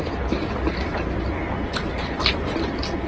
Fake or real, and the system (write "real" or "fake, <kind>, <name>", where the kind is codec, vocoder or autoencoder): real